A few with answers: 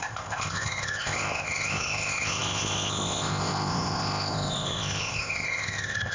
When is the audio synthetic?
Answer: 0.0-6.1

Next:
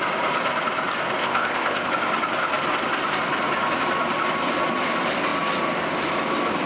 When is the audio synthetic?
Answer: 1.2-1.9